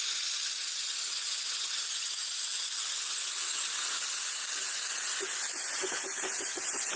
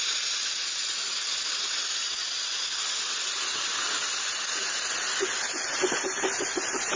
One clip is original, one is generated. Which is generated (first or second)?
second